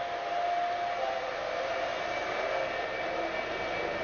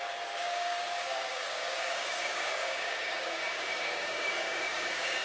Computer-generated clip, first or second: second